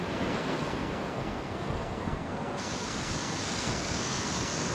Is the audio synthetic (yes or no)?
yes